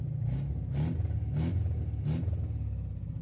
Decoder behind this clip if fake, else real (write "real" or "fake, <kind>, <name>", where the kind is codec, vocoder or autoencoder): real